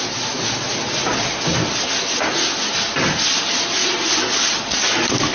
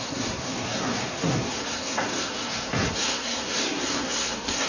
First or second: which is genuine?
first